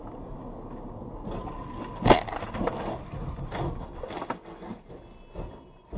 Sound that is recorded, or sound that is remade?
recorded